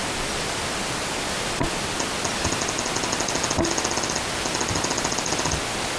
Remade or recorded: recorded